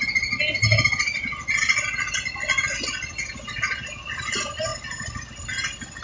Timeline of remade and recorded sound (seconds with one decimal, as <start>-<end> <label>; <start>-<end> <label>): 0.0-6.0 recorded